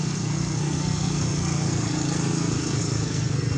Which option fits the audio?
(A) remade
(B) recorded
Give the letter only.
A